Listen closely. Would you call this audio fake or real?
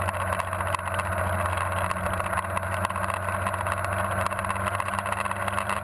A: real